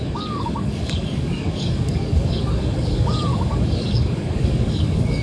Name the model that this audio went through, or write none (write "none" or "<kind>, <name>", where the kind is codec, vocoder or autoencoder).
codec, DAC